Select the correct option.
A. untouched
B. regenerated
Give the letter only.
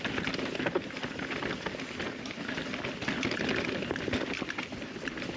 A